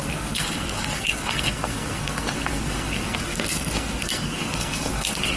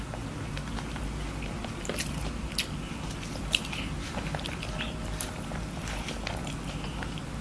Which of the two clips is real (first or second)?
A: second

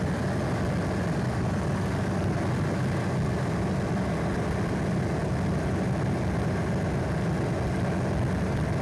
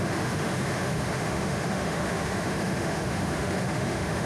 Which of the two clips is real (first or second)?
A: first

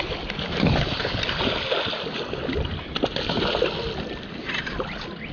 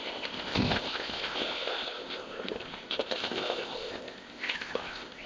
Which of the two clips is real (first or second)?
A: first